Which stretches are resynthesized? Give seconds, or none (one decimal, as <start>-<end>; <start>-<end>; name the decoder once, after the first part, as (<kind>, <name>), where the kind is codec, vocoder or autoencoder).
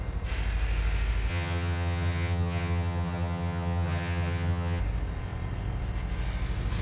1.3-4.8 (vocoder, HiFi-GAN)